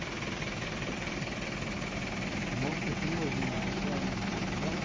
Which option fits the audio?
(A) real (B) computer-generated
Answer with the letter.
B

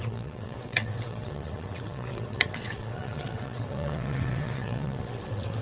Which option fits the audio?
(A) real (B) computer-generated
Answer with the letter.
B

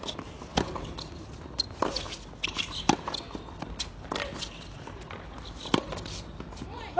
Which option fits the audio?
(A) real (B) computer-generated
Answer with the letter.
A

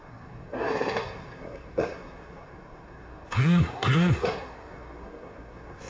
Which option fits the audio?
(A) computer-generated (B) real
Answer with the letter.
A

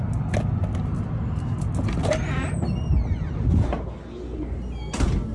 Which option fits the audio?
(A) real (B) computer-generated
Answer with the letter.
A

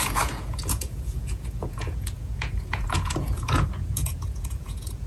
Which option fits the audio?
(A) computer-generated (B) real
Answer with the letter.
A